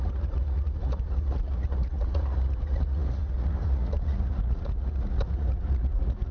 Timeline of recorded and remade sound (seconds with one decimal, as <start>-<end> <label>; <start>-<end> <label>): 0.0-6.3 remade